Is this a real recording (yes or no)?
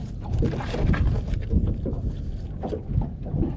yes